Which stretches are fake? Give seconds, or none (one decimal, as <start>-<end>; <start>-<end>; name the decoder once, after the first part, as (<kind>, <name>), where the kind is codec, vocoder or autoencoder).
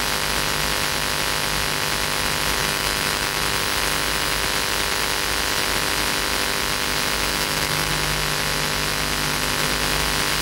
2.6-3.4 (autoencoder, DAC-VAE); 7.3-7.9